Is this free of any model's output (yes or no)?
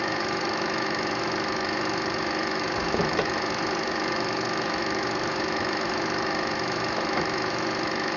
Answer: no